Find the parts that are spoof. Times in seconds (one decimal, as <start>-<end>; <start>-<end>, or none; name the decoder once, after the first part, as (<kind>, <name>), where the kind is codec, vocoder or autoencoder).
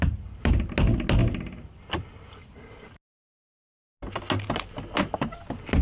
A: none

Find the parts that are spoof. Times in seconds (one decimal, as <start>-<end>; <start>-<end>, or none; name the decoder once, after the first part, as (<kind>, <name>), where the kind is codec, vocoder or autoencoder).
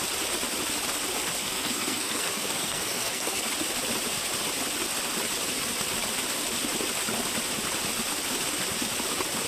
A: 1.4-3.4 (codec, SNAC)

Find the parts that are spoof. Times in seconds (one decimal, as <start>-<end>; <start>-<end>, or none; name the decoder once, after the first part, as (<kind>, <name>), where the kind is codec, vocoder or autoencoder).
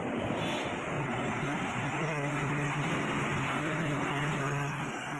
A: 1.0-2.9 (codec, SNAC); 3.4-5.2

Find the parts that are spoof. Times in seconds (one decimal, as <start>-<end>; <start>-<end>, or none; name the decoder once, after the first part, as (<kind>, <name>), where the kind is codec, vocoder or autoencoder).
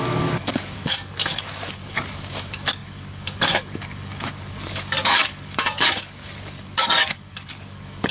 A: 0.0-8.1 (codec, DAC)